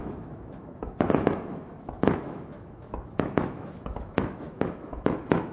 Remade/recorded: remade